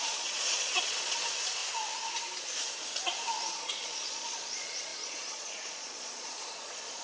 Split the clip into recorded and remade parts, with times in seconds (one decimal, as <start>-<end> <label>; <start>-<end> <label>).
0.0-1.6 remade; 1.6-3.5 recorded; 3.5-7.0 remade